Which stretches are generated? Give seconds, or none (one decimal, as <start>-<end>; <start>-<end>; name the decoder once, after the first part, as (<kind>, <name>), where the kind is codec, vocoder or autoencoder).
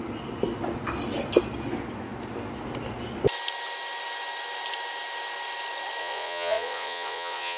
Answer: 6.0-7.6 (vocoder, Vocos)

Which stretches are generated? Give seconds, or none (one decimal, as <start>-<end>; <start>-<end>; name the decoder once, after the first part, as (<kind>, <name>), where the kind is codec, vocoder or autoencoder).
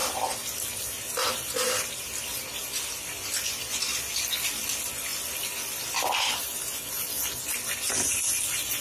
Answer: none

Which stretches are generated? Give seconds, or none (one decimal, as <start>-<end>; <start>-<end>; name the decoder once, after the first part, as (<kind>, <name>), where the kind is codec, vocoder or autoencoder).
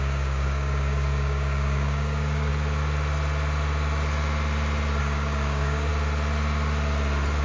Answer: 0.0-2.5 (codec, DAC); 5.0-5.9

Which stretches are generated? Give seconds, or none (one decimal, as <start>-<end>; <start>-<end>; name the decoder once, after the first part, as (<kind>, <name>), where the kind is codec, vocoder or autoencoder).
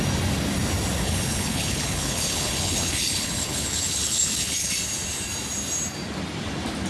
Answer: 1.0-4.7 (codec, HILCodec)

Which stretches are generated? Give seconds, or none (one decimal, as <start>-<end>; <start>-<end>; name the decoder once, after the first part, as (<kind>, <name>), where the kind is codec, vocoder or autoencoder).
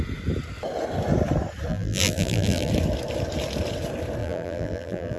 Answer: 1.7-2.7 (vocoder, BigVGAN v2); 4.2-5.2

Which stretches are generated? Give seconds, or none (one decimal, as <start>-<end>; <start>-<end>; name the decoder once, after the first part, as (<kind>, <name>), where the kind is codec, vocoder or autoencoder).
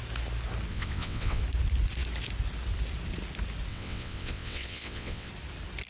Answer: 0.7-1.4 (vocoder, WaveNeXt); 3.7-5.3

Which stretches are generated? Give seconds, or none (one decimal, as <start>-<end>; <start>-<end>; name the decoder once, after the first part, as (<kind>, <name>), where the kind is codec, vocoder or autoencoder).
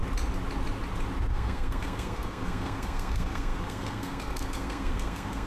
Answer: 1.3-5.5 (codec, SNAC)